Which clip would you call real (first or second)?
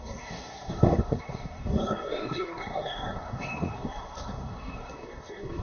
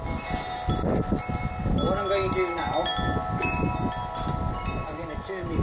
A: second